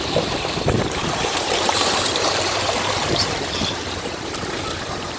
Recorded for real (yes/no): no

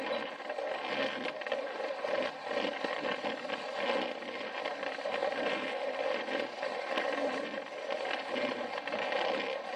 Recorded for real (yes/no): yes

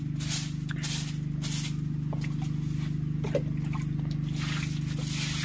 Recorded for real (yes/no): yes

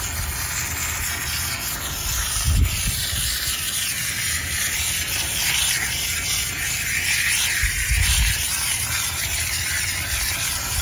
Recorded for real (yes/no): yes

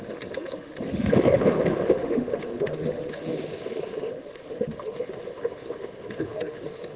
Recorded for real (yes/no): no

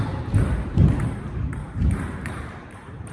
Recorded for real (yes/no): no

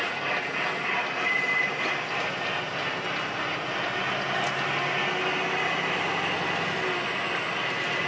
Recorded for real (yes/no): yes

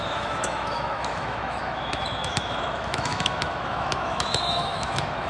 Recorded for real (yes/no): no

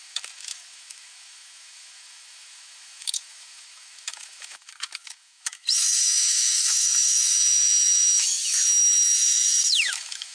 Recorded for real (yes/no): no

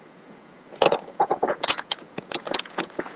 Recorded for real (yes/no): no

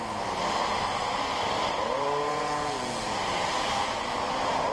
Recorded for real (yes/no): yes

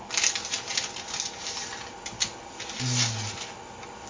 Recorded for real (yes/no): yes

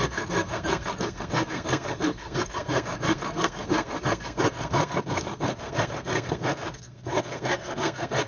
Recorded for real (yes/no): no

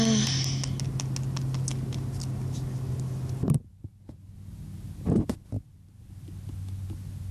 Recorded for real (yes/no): yes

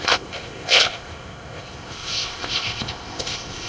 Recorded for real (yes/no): no